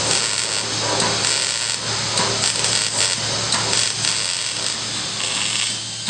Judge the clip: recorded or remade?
recorded